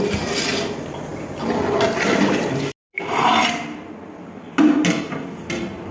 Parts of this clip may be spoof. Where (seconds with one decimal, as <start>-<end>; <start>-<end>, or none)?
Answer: none